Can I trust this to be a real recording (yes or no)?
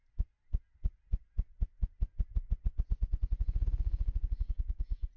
yes